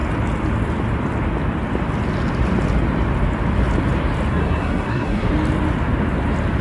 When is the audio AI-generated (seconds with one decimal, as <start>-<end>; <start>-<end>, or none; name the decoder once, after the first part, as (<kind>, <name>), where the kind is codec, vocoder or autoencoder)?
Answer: 4.3-5.3 (codec, SNAC)